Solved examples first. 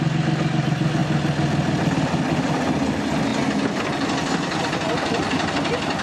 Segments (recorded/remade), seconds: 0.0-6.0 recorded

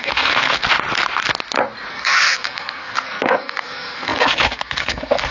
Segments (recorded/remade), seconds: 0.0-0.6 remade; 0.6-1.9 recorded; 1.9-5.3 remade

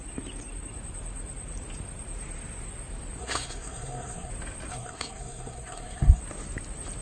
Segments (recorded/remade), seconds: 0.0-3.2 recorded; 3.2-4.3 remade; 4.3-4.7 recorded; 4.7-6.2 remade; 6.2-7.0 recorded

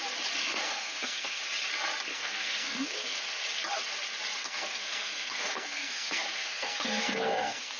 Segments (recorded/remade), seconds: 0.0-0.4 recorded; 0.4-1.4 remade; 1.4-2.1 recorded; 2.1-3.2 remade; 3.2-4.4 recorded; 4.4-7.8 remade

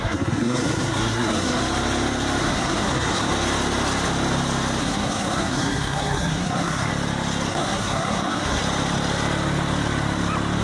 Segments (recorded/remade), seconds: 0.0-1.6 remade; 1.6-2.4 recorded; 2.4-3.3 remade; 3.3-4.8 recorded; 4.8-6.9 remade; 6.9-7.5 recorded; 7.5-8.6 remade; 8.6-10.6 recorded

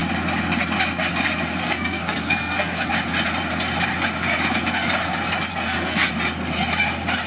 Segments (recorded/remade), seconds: 0.0-1.6 recorded; 1.6-2.9 remade; 2.9-5.5 recorded; 5.5-6.1 remade; 6.1-7.3 recorded

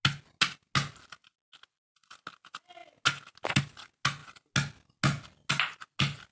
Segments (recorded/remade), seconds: 0.0-6.3 recorded